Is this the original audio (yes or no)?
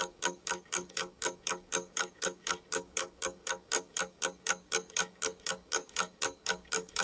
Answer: no